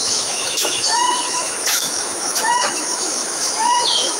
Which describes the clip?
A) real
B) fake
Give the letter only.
B